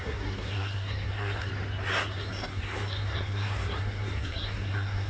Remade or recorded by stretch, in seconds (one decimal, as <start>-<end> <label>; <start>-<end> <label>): 0.0-1.5 remade; 1.5-1.9 recorded; 1.9-5.1 remade